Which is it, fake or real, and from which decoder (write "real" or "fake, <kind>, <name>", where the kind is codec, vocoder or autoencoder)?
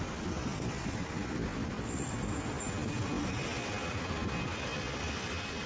real